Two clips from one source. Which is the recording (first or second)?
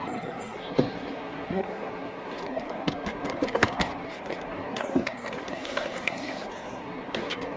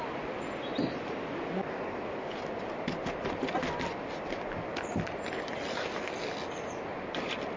second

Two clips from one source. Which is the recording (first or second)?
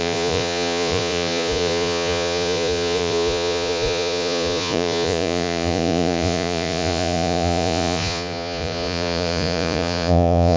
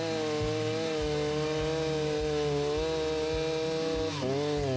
second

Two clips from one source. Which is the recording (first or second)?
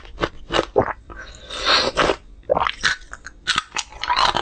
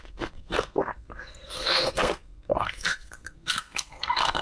first